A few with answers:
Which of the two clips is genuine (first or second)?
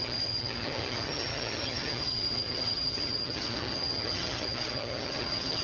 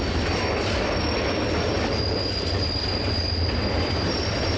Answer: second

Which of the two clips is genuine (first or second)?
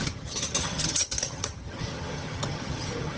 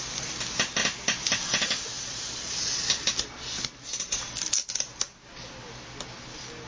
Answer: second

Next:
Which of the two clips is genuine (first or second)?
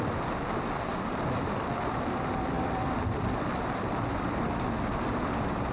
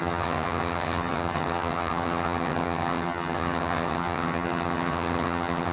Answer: first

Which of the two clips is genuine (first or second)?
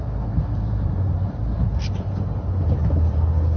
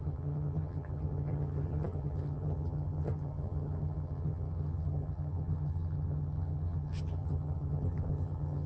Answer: first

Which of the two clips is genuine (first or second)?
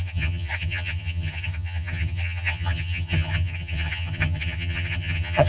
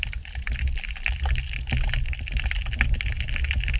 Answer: second